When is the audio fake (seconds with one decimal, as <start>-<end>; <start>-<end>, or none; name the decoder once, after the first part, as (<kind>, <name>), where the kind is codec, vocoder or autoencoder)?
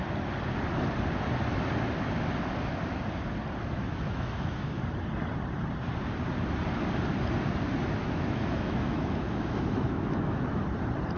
3.8-4.8 (autoencoder, DAC-VAE); 8.0-10.6